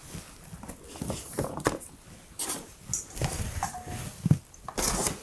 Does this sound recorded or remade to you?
recorded